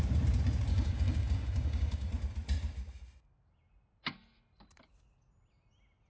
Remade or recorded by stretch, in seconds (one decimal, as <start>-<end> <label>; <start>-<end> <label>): 0.0-0.7 recorded; 0.7-2.1 remade; 2.1-6.1 recorded